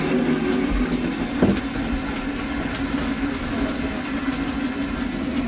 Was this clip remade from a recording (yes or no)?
no